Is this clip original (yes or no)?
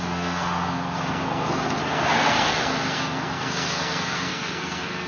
no